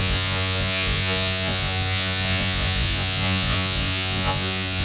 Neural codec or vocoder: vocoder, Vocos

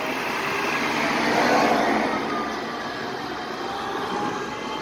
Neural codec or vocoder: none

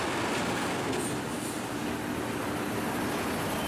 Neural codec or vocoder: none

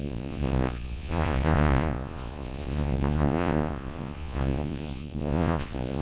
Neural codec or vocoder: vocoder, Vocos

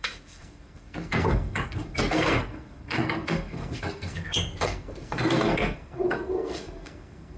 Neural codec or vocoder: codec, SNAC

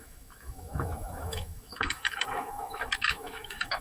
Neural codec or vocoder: autoencoder, DAC-VAE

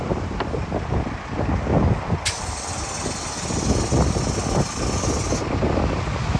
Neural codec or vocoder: none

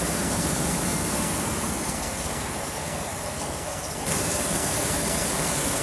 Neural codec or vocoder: codec, SNAC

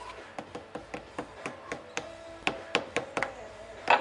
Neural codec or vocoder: none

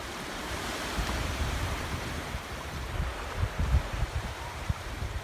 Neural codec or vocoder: vocoder, BigVGAN v2